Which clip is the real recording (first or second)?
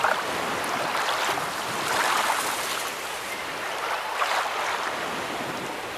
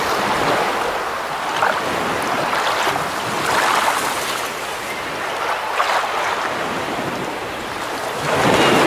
second